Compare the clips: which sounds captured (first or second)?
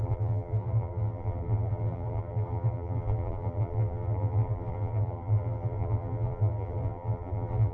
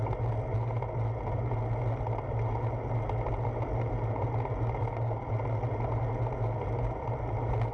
second